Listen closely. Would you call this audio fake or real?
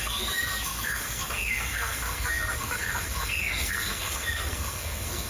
fake